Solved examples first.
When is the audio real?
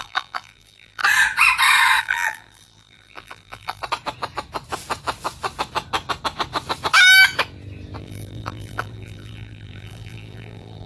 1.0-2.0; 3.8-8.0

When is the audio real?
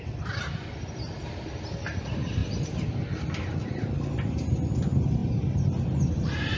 0.0-6.6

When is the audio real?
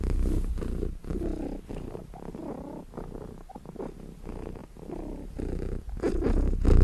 0.0-6.8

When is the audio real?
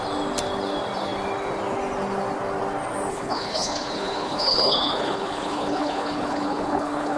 0.0-3.1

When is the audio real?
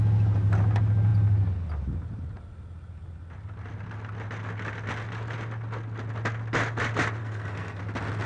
0.0-7.2; 7.8-8.3